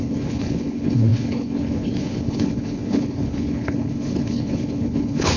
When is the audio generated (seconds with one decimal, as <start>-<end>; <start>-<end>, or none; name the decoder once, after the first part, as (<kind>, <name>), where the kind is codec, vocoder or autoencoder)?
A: 0.0-5.4 (codec, HILCodec)